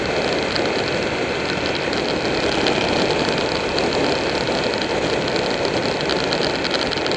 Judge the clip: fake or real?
real